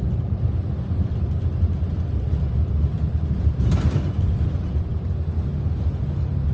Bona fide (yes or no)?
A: yes